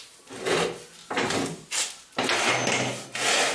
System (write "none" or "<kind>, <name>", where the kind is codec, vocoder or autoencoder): none